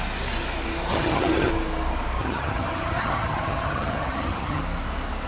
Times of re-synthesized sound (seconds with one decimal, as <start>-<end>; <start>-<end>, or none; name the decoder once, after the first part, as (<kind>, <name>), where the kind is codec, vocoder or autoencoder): 0.9-1.5 (vocoder, HiFi-GAN); 2.2-4.6